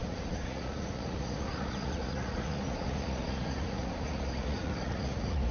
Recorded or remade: remade